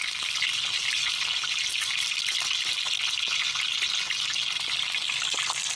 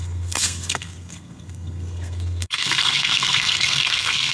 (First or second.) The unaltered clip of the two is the first